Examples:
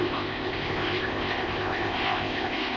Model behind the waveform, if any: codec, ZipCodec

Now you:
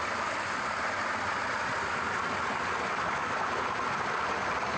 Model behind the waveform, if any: none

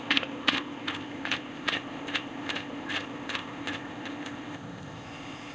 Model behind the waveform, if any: codec, ZipCodec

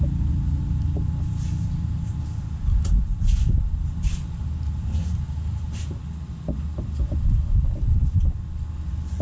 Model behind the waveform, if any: none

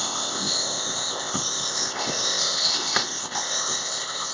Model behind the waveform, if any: codec, ZipCodec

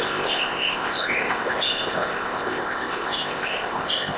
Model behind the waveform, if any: codec, ZipCodec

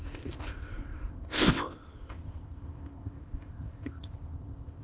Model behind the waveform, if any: codec, ZipCodec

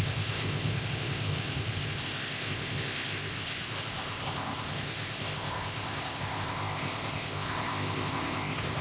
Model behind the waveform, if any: codec, ZipCodec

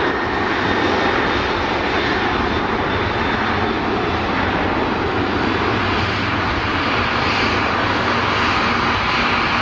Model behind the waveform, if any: none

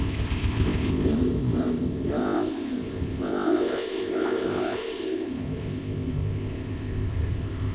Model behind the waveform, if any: codec, ZipCodec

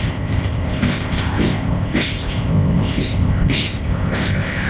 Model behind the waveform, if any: codec, ZipCodec